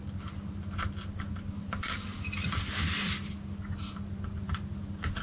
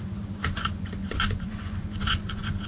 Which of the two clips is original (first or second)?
first